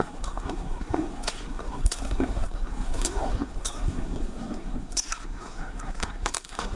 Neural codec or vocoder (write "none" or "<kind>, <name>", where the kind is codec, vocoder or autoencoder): codec, SNAC